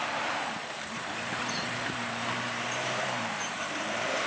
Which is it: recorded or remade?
remade